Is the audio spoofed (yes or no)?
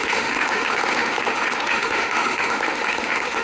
yes